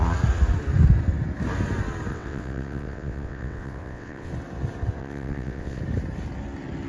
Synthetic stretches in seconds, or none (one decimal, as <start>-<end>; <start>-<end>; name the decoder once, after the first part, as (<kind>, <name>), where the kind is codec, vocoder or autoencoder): 2.1-4.3 (vocoder, WaveNeXt); 5.0-5.8

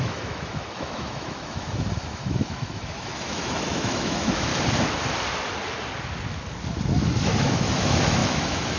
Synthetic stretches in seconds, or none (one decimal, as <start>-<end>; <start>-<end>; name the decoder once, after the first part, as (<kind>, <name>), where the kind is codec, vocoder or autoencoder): 0.0-4.5 (autoencoder, DAC-VAE); 7.2-8.8